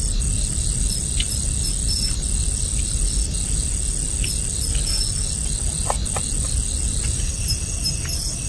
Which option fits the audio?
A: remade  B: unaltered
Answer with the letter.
B